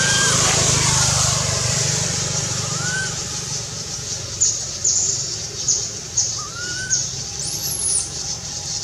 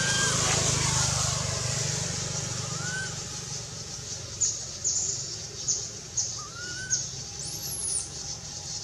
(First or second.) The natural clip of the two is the second